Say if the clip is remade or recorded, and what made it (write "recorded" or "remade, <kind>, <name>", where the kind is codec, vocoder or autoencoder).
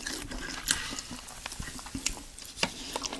recorded